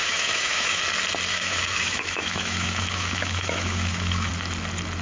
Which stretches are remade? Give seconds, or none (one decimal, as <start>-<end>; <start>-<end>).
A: 0.0-0.8; 1.3-4.3